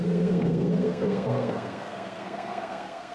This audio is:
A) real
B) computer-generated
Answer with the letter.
B